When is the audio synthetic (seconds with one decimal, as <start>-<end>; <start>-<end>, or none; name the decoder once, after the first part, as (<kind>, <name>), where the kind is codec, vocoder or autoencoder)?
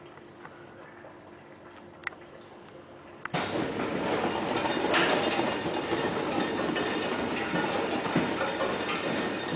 none